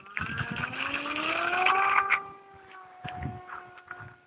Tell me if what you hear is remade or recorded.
recorded